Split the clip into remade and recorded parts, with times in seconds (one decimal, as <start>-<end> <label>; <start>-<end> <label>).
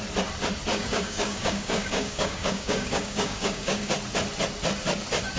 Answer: 0.0-0.7 recorded; 0.7-3.9 remade; 3.9-5.4 recorded